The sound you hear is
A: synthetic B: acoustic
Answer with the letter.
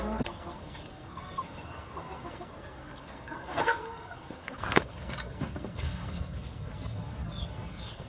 A